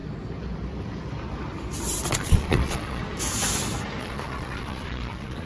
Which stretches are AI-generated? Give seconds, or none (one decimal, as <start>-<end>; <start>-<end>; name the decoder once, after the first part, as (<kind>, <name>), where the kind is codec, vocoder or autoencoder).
2.1-3.0 (vocoder, Vocos); 4.0-5.5